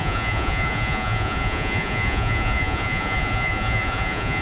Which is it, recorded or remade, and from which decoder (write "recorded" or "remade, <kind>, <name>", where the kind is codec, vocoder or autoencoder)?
remade, vocoder, Vocos